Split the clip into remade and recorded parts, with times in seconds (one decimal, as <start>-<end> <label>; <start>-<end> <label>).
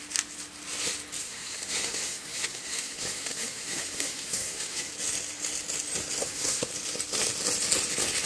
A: 0.0-1.2 recorded; 1.2-4.9 remade; 4.9-6.2 recorded; 6.2-6.7 remade; 6.7-8.3 recorded